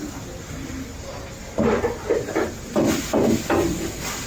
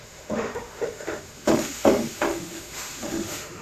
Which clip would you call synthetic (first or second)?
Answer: second